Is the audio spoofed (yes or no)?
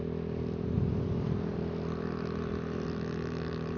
no